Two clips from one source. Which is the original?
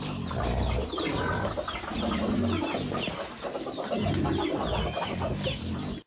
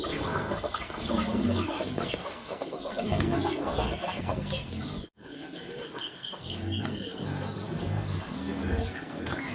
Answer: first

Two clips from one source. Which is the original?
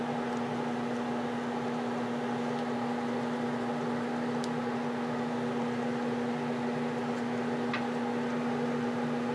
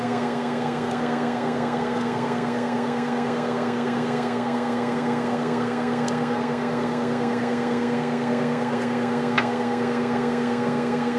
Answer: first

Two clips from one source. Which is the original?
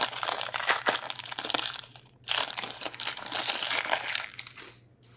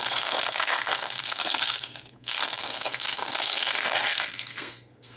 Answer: first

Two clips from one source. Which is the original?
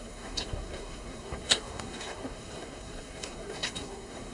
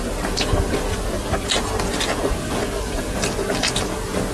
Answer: second